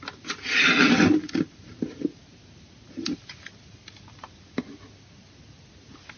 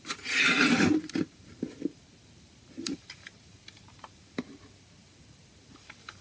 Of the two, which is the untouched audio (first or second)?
first